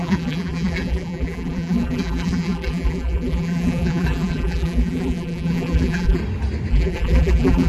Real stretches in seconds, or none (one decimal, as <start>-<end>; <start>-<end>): 6.2-6.7

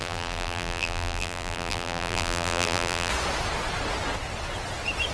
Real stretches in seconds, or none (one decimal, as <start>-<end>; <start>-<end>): 3.1-5.1

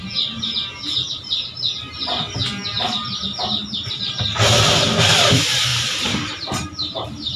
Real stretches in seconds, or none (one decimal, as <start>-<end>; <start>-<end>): 0.0-5.7

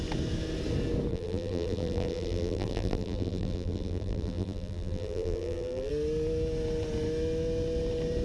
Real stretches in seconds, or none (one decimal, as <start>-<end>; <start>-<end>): 0.0-1.1; 5.9-8.2

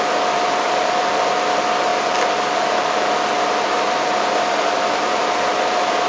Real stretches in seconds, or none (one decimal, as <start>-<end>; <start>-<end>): 1.9-3.7

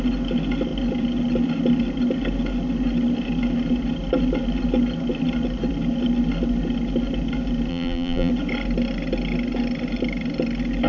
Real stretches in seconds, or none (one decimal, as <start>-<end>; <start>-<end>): 0.0-7.7; 8.3-10.9